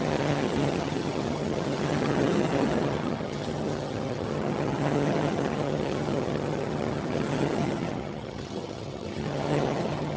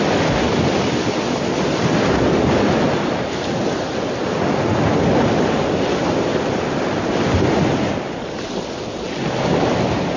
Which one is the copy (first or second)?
first